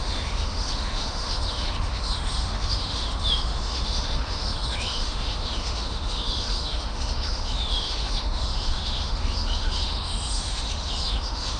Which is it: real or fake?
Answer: fake